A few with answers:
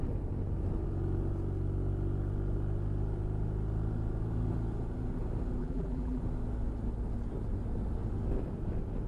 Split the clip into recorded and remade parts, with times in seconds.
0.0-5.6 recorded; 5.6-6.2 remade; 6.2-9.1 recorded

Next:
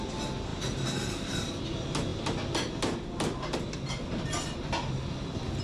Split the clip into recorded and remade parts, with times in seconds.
0.0-0.5 recorded; 0.5-1.6 remade; 1.6-5.6 recorded

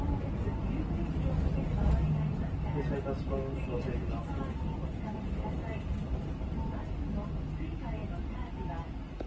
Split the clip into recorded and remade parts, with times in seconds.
0.0-9.3 recorded

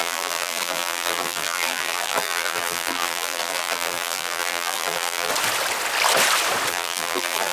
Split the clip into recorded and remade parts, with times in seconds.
0.0-5.3 remade; 5.3-6.7 recorded; 6.7-7.5 remade

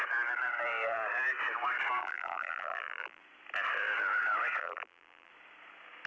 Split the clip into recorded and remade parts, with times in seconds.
0.0-2.0 recorded; 2.0-3.2 remade; 3.2-4.6 recorded; 4.6-5.3 remade; 5.3-6.1 recorded